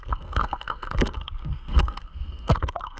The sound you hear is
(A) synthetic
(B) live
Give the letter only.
A